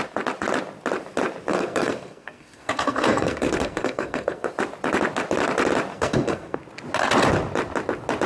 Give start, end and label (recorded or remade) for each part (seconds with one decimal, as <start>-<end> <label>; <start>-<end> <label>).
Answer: 0.0-1.5 recorded; 1.5-4.5 remade; 4.5-5.9 recorded; 5.9-6.6 remade; 6.6-8.3 recorded